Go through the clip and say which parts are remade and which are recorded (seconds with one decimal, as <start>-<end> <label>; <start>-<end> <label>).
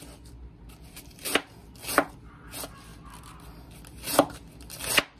0.0-5.2 recorded